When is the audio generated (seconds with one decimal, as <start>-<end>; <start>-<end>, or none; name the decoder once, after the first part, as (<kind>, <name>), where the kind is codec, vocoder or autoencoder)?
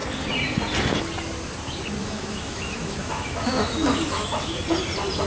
2.0-4.6 (autoencoder, DAC-VAE)